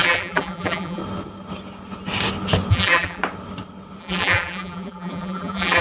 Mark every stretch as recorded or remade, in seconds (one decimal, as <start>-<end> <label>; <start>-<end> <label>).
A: 0.0-1.0 remade; 1.0-2.7 recorded; 2.7-3.2 remade; 3.2-4.0 recorded; 4.0-5.8 remade